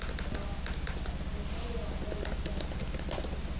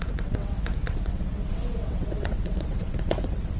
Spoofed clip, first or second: second